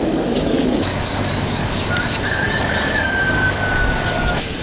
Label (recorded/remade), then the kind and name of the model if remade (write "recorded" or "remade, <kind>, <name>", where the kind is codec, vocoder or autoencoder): remade, codec, DAC